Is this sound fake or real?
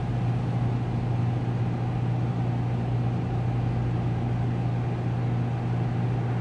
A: real